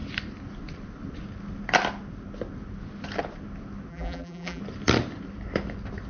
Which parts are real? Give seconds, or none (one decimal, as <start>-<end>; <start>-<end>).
0.0-3.9; 4.6-6.1